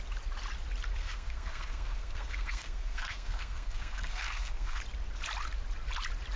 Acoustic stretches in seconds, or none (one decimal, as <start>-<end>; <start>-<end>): 0.0-1.0; 4.8-6.4